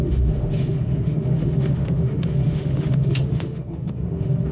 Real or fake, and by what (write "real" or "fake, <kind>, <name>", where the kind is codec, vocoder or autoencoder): fake, autoencoder, DAC-VAE